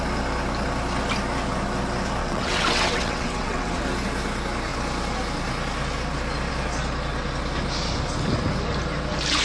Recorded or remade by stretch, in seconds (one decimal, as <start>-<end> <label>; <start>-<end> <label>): 0.0-2.2 recorded; 2.2-3.8 remade; 3.8-9.4 recorded